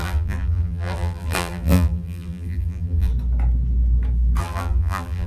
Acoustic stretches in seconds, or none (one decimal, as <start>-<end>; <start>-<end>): 3.1-4.4